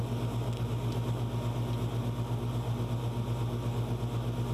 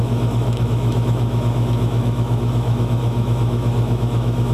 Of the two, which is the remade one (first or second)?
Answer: second